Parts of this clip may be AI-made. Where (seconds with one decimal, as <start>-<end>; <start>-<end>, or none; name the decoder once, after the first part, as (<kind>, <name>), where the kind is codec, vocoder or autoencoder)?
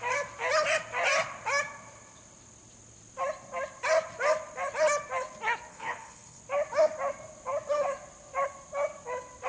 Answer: 5.7-6.4 (codec, HILCodec)